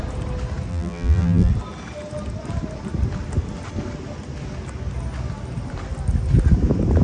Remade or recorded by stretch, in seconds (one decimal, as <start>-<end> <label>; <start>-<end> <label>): 0.0-0.7 recorded; 0.7-1.5 remade; 1.5-7.0 recorded